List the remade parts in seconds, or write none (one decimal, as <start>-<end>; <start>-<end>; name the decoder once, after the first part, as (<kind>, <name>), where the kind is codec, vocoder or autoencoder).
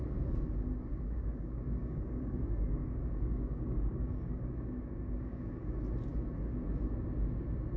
0.9-5.6 (codec, DAC)